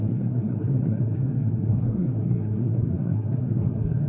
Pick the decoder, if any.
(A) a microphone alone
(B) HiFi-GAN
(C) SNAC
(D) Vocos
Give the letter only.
C